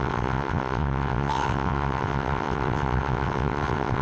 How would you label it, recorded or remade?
remade